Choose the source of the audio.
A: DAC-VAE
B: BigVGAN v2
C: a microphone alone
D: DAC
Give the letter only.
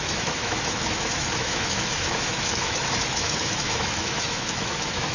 A